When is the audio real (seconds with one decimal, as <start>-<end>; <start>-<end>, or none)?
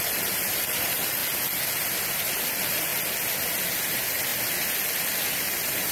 1.2-2.1; 2.9-3.8; 4.3-5.3